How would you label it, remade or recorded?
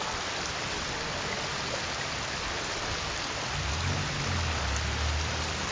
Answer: recorded